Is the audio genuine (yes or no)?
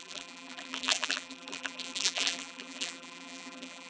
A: no